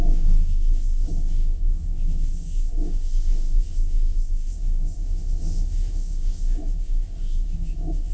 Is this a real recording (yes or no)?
no